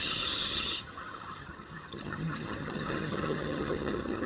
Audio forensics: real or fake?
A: fake